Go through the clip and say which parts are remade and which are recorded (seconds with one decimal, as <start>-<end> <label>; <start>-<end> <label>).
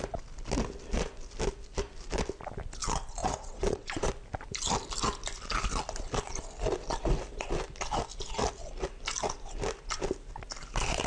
0.0-3.2 recorded; 3.2-4.1 remade; 4.1-11.1 recorded